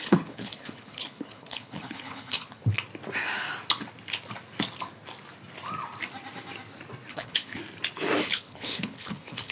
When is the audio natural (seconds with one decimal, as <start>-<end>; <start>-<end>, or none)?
2.6-7.1; 7.6-8.2